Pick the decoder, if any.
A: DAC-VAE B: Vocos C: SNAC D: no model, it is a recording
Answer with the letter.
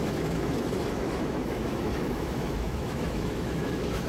A